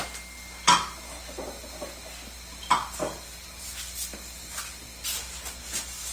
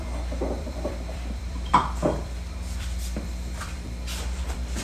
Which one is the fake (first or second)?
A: second